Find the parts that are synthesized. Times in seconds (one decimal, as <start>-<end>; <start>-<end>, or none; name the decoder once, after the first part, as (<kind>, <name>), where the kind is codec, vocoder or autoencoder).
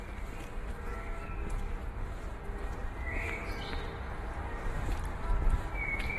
2.8-5.3 (vocoder, BigVGAN v2)